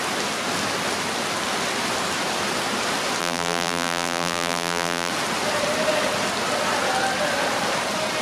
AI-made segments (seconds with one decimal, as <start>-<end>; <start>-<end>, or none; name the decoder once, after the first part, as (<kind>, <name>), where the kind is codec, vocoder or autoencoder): 3.2-5.1 (vocoder, BigVGAN v2)